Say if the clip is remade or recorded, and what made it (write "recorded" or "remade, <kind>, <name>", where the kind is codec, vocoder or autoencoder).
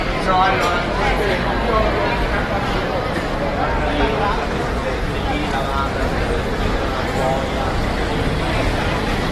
recorded